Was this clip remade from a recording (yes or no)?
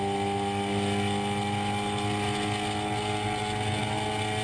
no